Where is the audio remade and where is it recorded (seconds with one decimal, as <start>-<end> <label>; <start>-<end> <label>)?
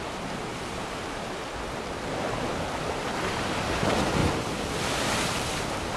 0.0-0.5 remade; 0.5-3.2 recorded; 3.2-4.2 remade; 4.2-5.1 recorded; 5.1-6.0 remade